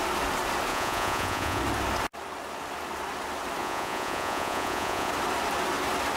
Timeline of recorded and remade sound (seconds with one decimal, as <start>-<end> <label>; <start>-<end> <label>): 0.0-0.7 recorded; 0.7-1.6 remade; 1.6-3.6 recorded; 3.6-5.1 remade; 5.1-6.2 recorded